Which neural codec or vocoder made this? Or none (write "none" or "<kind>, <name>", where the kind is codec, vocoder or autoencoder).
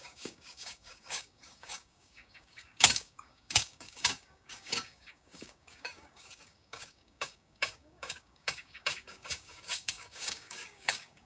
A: codec, DAC